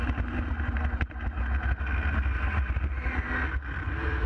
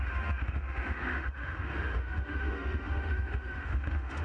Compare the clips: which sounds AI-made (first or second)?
second